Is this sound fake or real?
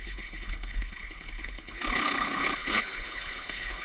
fake